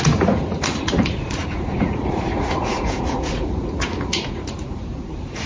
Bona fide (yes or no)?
no